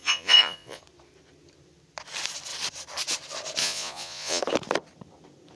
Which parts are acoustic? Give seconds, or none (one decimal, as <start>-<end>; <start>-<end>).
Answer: 0.8-3.6; 4.4-5.6